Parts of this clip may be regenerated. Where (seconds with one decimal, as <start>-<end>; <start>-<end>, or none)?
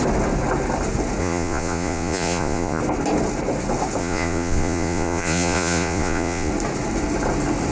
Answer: 1.2-2.8; 4.0-6.5